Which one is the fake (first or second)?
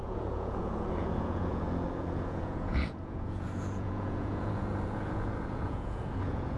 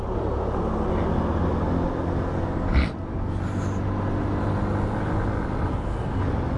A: first